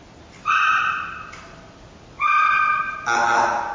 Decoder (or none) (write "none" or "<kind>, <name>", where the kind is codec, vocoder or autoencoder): none